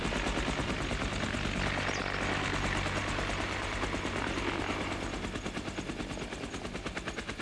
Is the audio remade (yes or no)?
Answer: no